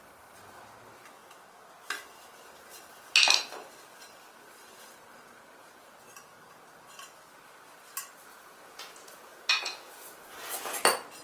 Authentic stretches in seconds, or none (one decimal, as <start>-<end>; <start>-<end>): 0.0-8.3; 10.3-11.2